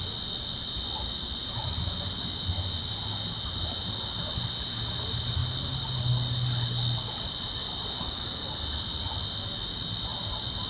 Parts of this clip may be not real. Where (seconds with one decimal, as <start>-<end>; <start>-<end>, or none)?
none